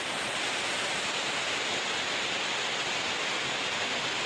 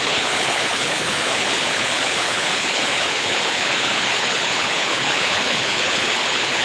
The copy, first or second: second